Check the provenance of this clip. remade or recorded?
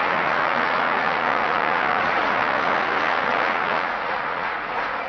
remade